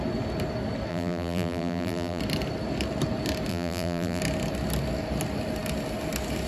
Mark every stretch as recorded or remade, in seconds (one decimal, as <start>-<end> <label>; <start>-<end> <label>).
0.0-0.9 recorded; 0.9-2.2 remade; 2.2-3.5 recorded; 3.5-4.2 remade; 4.2-6.5 recorded